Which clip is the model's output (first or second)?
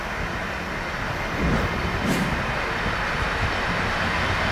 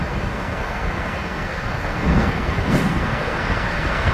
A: second